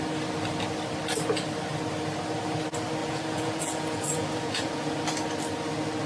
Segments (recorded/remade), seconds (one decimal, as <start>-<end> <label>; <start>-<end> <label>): 0.0-3.0 recorded; 3.0-5.0 remade; 5.0-6.1 recorded